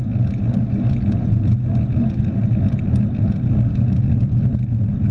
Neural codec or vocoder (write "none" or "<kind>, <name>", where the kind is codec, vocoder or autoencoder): none